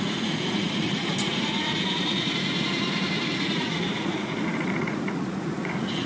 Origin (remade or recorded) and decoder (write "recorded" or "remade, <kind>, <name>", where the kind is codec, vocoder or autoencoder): remade, vocoder, Vocos